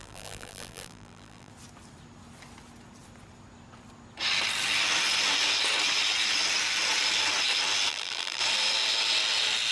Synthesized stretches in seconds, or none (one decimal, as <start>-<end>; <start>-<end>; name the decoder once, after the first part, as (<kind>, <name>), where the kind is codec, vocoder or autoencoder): 0.0-1.5 (vocoder, BigVGAN v2); 7.9-8.4